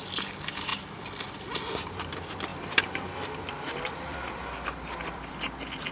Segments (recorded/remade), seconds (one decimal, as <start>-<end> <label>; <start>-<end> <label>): 0.0-0.7 remade; 0.7-1.8 recorded; 1.8-5.9 remade